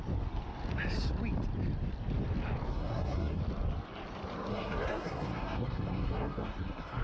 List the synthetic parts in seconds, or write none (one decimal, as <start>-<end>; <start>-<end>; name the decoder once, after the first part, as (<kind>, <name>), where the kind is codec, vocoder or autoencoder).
2.7-3.4 (codec, SNAC); 4.5-7.0